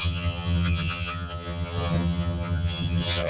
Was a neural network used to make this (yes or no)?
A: yes